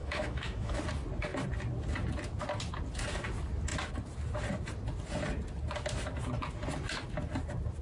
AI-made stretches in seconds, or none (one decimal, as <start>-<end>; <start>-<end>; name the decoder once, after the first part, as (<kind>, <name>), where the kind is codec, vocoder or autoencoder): 0.0-0.8 (autoencoder, DAC-VAE)

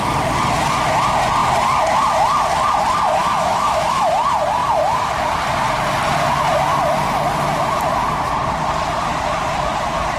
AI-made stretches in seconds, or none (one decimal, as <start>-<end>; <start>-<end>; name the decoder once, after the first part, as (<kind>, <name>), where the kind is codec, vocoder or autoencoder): 3.2-4.1 (autoencoder, DAC-VAE)

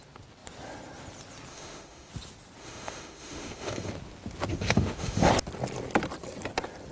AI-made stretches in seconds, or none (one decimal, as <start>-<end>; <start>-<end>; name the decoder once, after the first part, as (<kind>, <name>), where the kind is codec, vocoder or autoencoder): 1.5-2.1 (autoencoder, DAC-VAE); 2.6-3.9; 4.5-5.3

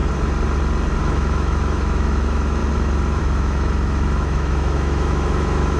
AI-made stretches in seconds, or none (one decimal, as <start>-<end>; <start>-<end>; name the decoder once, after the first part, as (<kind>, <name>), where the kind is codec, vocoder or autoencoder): 1.0-2.6 (autoencoder, DAC-VAE); 3.2-5.8